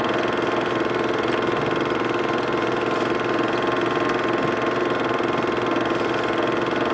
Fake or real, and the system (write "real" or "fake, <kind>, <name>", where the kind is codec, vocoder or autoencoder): real